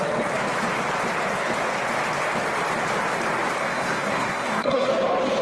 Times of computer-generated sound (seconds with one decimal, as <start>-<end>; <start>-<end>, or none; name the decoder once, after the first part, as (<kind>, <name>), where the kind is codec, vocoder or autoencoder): 3.6-4.9 (codec, SNAC)